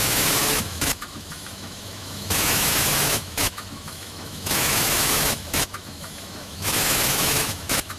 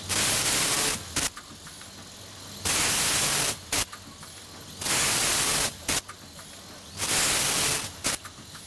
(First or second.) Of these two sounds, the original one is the second